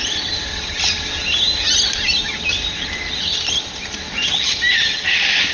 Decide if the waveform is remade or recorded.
recorded